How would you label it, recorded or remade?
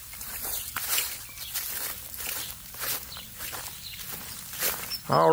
remade